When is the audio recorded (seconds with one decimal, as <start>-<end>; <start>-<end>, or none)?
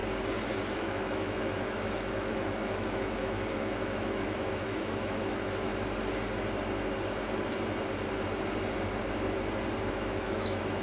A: 0.0-0.7; 5.7-9.9